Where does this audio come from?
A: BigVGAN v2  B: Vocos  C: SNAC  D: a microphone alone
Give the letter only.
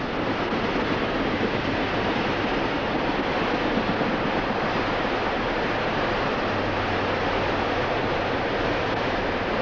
D